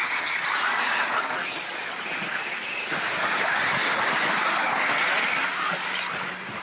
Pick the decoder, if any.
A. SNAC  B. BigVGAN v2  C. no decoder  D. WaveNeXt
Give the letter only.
C